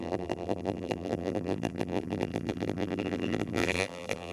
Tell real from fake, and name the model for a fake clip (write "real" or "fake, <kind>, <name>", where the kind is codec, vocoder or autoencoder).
fake, vocoder, BigVGAN v2